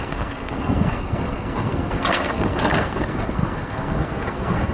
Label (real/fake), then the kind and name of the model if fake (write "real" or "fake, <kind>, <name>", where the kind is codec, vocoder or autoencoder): fake, codec, SNAC